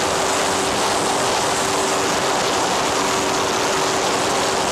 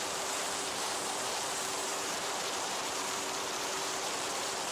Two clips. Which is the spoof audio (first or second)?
second